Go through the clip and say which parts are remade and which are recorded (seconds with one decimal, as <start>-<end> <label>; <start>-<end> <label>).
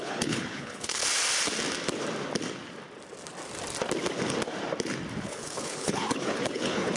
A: 0.0-1.0 remade; 1.0-5.2 recorded; 5.2-7.0 remade